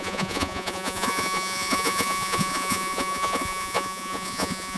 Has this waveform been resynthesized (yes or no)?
yes